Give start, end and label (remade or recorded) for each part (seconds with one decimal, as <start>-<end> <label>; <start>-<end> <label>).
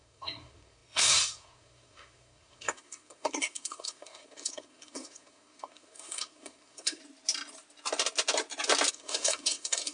0.0-7.0 remade; 7.0-8.9 recorded; 8.9-9.9 remade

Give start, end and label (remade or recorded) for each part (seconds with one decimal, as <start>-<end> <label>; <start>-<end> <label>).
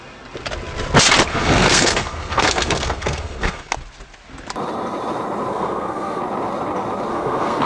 0.0-1.3 recorded; 1.3-3.7 remade; 3.7-5.5 recorded; 5.5-6.2 remade; 6.2-7.1 recorded; 7.1-7.7 remade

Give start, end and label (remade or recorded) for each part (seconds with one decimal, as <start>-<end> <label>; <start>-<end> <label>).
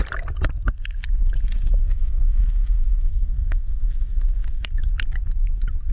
0.0-1.8 recorded; 1.8-4.7 remade; 4.7-5.9 recorded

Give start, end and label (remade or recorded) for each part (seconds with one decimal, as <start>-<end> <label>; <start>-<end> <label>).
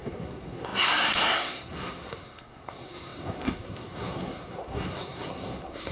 0.0-5.9 remade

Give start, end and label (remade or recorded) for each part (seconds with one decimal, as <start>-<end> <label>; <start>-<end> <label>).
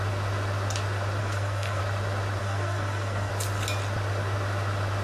0.0-1.2 recorded; 1.2-1.8 remade; 1.8-2.4 recorded; 2.4-3.3 remade; 3.3-5.0 recorded